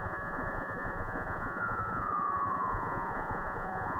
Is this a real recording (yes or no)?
no